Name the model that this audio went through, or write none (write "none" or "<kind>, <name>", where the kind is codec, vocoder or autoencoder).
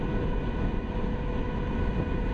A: none